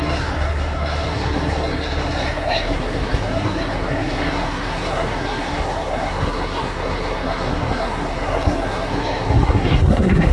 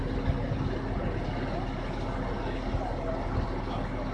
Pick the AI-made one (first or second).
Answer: first